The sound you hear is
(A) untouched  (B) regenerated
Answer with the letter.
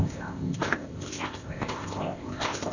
B